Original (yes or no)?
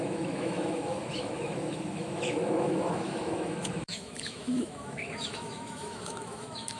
no